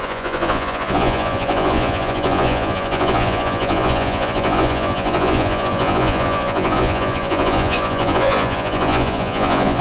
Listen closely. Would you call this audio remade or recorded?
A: remade